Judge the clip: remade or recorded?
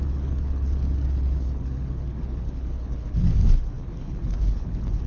remade